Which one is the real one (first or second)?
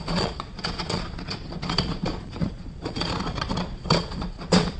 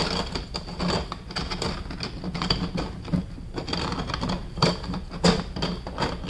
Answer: second